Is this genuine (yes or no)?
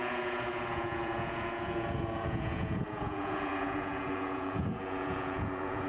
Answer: no